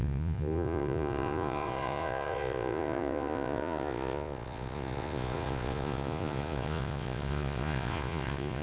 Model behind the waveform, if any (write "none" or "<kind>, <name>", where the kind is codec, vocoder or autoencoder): vocoder, Vocos